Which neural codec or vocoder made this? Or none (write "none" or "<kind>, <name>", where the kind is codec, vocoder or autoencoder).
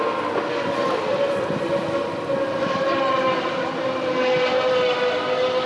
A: none